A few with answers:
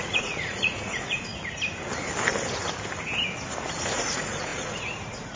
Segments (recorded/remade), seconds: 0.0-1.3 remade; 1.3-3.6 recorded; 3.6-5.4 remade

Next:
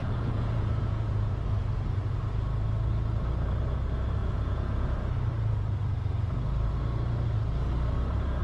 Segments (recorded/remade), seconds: 0.0-1.3 remade; 1.3-4.2 recorded; 4.2-5.0 remade; 5.0-8.4 recorded

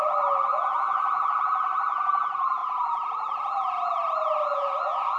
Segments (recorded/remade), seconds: 0.0-0.5 recorded; 0.5-1.3 remade; 1.3-2.6 recorded; 2.6-4.0 remade; 4.0-5.2 recorded

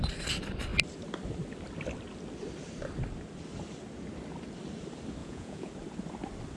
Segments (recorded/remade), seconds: 0.0-5.2 recorded; 5.2-5.7 remade; 5.7-6.6 recorded

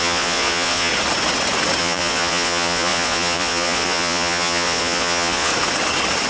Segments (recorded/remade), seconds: 0.0-0.9 remade; 0.9-1.8 recorded; 1.8-5.5 remade; 5.5-6.3 recorded